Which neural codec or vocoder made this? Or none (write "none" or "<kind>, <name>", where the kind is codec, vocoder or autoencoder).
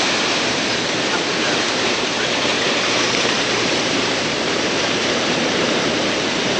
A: vocoder, BigVGAN v2